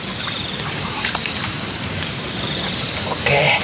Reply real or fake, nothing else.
fake